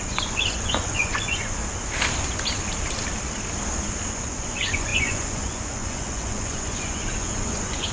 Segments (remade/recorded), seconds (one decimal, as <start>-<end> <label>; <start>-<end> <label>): 0.0-1.6 remade; 1.6-4.1 recorded; 4.1-7.9 remade